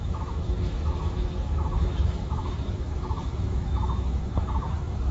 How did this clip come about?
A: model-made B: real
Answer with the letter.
A